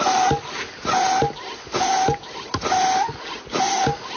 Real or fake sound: real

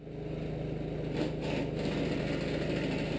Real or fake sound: real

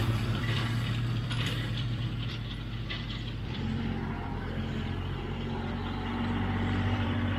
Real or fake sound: fake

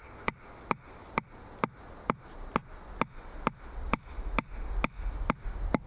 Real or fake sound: real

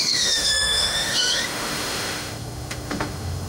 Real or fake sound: fake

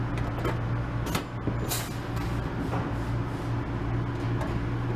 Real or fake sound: real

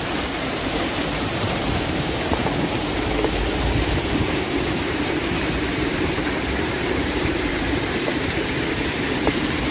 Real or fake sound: fake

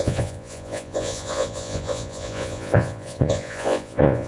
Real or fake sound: fake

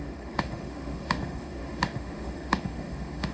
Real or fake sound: fake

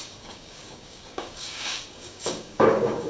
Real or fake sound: fake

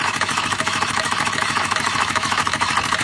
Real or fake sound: fake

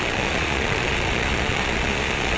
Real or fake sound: fake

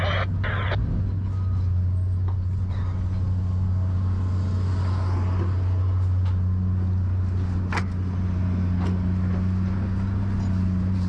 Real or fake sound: real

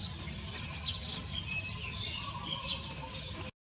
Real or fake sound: real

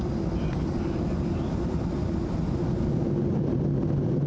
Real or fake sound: real